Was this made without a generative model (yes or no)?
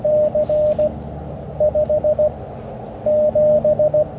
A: yes